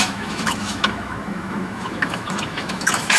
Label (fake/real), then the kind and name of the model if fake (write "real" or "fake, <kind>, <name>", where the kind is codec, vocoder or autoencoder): fake, autoencoder, DAC-VAE